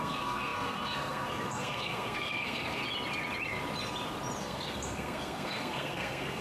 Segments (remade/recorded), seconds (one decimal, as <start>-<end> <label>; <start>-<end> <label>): 0.0-2.8 remade; 2.8-4.4 recorded; 4.4-6.4 remade